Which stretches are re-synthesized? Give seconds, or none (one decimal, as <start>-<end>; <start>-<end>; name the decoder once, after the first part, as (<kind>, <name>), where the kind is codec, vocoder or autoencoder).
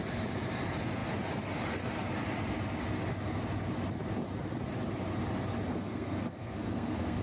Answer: 5.7-7.2 (codec, SNAC)